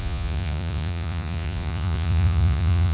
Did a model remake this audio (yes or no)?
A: yes